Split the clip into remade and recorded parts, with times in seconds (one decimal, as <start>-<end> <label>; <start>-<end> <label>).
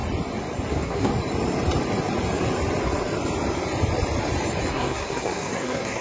0.0-0.7 recorded; 0.7-1.1 remade; 1.1-4.7 recorded; 4.7-6.0 remade